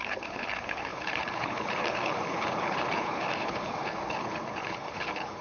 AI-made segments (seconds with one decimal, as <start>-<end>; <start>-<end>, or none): 0.0-5.4